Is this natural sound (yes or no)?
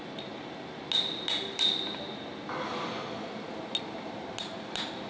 yes